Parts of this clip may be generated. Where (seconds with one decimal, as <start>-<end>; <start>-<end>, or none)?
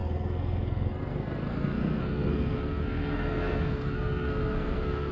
0.0-5.1